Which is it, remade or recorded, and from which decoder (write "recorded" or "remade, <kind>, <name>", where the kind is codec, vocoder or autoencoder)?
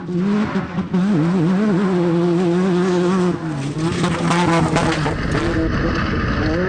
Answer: recorded